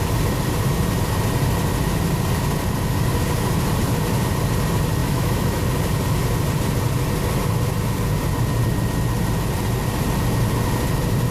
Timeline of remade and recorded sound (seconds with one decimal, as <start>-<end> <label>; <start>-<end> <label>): 0.0-5.0 recorded; 5.0-5.6 remade; 5.6-11.3 recorded